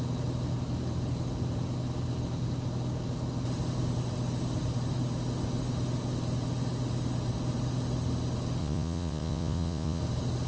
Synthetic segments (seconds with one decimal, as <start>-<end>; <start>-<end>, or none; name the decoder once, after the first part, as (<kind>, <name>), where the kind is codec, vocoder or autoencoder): 8.6-10.0 (vocoder, Vocos)

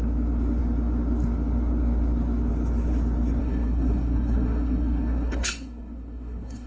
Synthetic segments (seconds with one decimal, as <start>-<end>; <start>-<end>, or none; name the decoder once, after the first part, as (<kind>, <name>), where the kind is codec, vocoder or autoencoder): 3.4-6.7 (codec, SNAC)

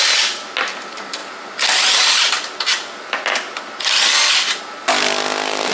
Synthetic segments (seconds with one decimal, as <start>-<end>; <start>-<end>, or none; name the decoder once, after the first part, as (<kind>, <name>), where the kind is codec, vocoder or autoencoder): none